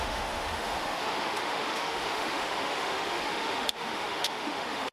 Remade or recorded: remade